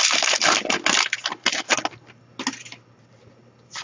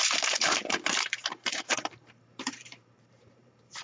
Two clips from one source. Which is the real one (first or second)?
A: first